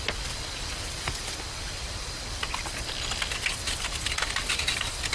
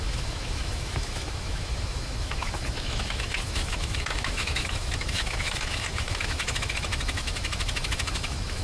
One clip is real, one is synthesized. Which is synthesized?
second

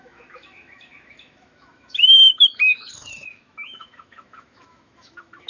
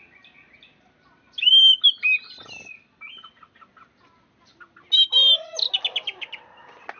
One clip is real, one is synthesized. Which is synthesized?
first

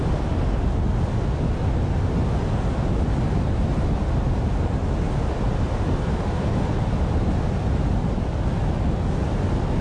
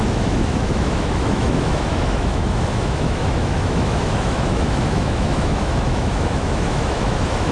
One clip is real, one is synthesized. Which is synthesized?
second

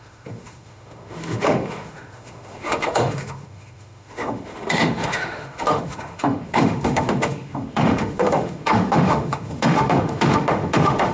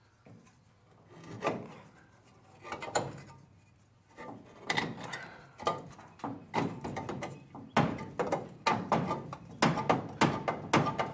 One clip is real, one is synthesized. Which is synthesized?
first